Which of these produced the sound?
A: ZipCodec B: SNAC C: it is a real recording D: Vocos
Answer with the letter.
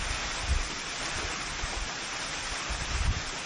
C